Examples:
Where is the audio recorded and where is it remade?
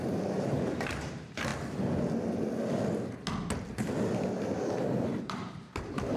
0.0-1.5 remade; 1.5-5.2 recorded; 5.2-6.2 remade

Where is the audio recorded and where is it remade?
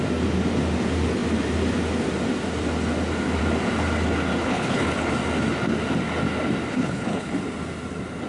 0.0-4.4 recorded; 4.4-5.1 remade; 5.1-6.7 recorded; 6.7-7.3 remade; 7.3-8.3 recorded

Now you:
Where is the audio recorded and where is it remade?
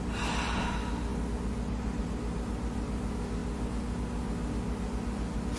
0.0-5.6 recorded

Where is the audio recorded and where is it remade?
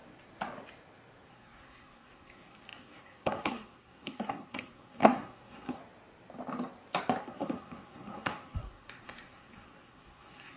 0.0-1.3 recorded; 1.3-5.8 remade; 5.8-7.2 recorded; 7.2-10.6 remade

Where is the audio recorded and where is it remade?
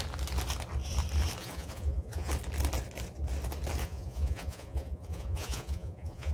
0.0-1.4 recorded; 1.4-2.3 remade; 2.3-3.8 recorded; 3.8-6.3 remade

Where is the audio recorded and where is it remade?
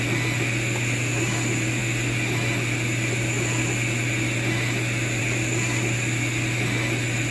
0.0-7.3 recorded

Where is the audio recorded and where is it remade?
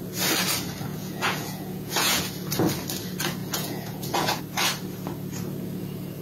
0.0-0.9 recorded; 0.9-2.2 remade; 2.2-3.4 recorded; 3.4-4.4 remade; 4.4-6.2 recorded